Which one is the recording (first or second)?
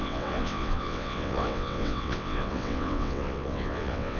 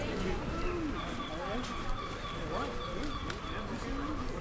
second